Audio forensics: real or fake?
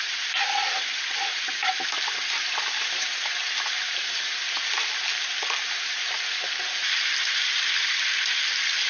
fake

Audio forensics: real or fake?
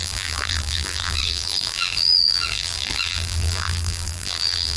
fake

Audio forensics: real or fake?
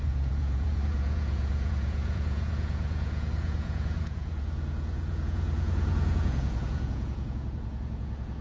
fake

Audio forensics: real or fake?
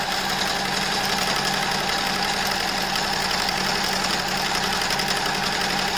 real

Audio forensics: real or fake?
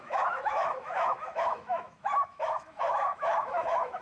fake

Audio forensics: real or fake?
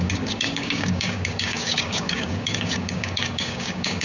fake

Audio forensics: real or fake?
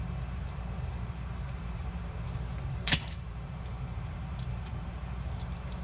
fake